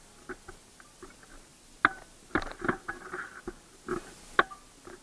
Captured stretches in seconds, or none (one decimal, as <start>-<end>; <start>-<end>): 0.0-5.0